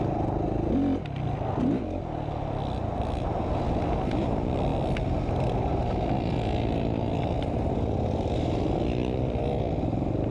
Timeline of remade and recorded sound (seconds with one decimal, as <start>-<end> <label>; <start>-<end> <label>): 0.0-10.3 recorded